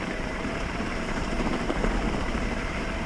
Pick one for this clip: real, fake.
fake